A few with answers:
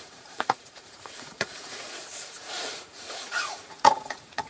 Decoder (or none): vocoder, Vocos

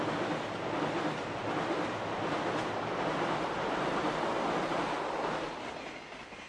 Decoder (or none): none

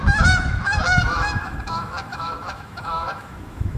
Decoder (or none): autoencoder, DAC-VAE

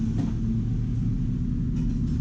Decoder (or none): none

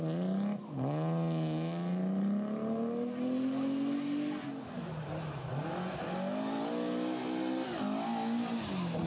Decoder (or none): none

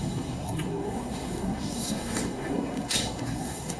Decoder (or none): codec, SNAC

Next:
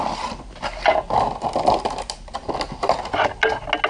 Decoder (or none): none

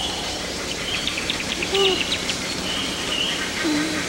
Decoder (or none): vocoder, BigVGAN v2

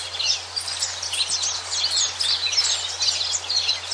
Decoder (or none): none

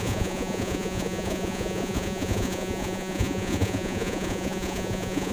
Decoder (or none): vocoder, Vocos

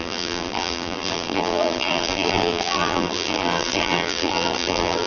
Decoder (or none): vocoder, BigVGAN v2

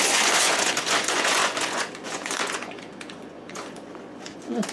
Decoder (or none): vocoder, Vocos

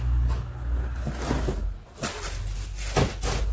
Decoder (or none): none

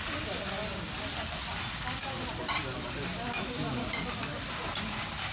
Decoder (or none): none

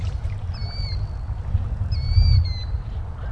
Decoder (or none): none